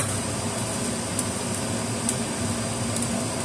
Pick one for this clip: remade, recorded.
recorded